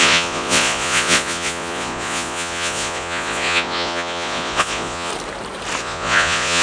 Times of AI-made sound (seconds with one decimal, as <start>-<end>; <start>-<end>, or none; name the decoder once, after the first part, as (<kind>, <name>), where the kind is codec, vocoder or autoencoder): 0.0-5.1 (vocoder, Vocos); 5.8-6.6